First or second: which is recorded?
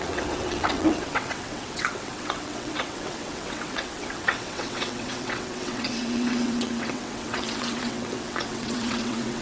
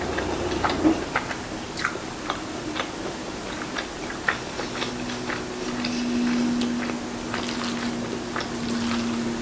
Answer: second